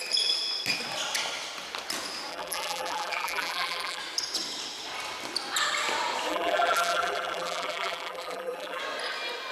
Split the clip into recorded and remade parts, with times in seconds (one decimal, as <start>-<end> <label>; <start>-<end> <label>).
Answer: 0.0-2.3 recorded; 2.3-4.0 remade; 4.0-6.3 recorded; 6.3-8.8 remade; 8.8-9.5 recorded